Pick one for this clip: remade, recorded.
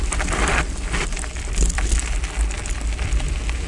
recorded